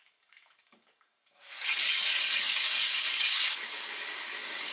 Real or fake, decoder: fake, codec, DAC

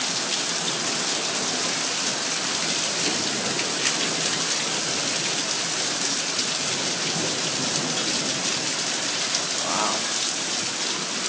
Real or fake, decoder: real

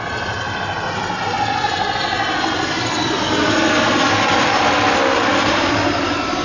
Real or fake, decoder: real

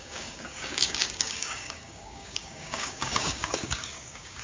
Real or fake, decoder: fake, codec, DAC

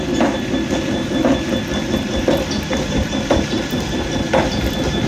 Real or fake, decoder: real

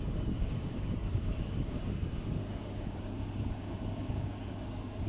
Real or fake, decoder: fake, codec, DAC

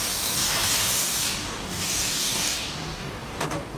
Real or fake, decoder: fake, codec, DAC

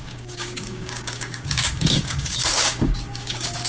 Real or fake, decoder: fake, codec, DAC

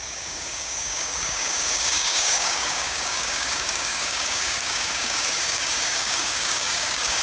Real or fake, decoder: fake, codec, DAC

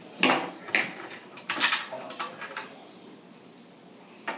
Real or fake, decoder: real